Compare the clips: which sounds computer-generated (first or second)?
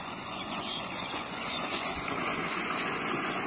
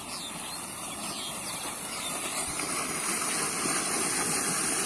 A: first